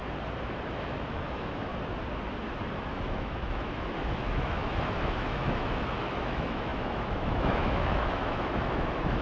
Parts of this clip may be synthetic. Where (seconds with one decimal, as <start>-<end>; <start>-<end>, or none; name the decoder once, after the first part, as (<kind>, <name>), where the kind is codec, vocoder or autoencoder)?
0.7-1.7 (autoencoder, DAC-VAE); 2.9-9.2